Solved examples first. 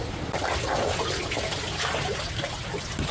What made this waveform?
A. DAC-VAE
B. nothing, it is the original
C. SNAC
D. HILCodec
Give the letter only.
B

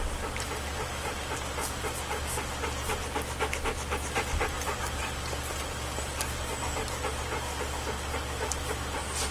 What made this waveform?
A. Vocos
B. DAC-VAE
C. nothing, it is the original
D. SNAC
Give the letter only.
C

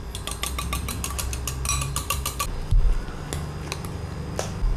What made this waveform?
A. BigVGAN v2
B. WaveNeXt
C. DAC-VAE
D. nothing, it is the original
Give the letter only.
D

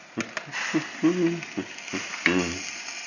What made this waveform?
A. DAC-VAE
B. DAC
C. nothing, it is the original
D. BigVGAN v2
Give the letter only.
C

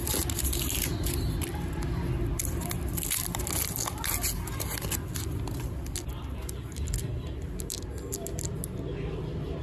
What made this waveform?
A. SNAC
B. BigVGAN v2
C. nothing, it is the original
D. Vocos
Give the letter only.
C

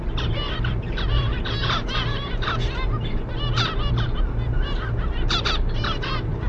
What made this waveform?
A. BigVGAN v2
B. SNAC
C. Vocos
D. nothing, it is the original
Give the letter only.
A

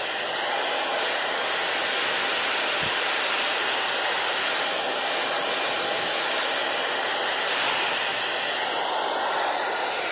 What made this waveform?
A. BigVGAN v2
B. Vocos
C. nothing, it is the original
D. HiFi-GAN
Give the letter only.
C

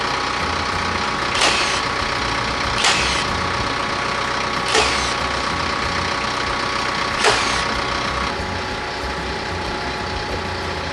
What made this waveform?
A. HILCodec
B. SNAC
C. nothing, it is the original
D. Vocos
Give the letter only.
C